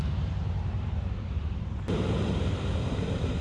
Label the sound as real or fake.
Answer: fake